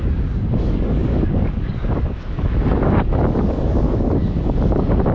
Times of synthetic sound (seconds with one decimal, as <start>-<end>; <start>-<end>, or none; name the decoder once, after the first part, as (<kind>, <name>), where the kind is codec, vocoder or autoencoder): 0.0-5.1 (codec, DAC)